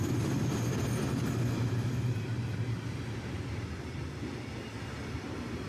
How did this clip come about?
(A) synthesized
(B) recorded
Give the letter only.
B